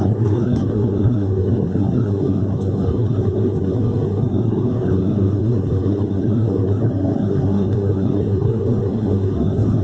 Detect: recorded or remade remade